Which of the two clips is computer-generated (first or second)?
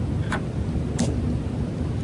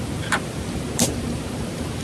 second